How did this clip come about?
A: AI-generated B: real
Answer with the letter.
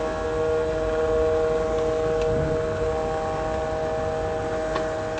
B